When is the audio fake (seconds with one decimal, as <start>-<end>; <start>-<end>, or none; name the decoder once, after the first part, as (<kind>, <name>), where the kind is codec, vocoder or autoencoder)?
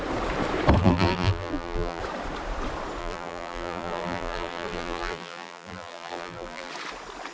0.8-2.0 (vocoder, BigVGAN v2); 3.0-6.7